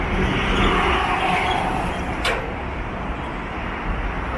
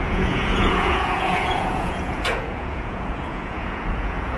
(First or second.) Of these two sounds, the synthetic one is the second